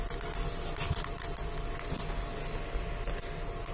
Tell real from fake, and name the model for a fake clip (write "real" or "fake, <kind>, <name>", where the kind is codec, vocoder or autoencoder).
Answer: real